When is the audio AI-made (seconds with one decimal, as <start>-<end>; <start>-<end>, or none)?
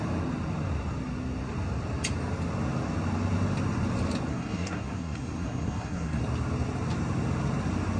4.3-6.2